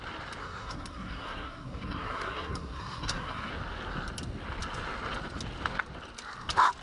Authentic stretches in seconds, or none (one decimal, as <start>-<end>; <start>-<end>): 0.0-0.4; 3.5-6.8